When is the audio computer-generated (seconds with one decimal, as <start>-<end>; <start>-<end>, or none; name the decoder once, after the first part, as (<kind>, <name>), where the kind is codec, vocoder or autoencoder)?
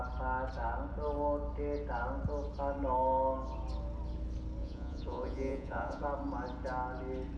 4.6-6.0 (vocoder, Vocos)